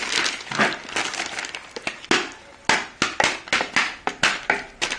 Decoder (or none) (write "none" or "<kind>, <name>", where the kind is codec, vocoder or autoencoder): none